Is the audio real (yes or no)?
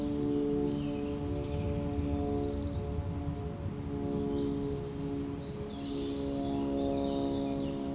yes